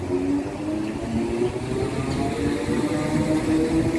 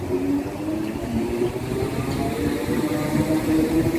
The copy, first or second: second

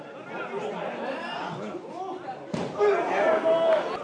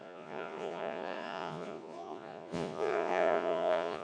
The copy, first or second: second